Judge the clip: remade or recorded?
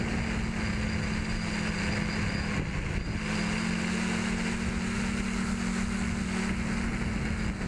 recorded